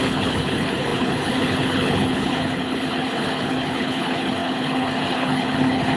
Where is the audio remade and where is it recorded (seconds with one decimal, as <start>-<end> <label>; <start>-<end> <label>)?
0.0-6.0 remade